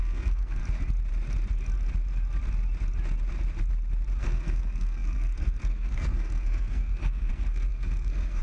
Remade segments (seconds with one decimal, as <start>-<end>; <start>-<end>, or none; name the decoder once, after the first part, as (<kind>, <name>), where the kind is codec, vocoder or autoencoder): 0.0-0.6 (codec, SNAC); 4.2-8.4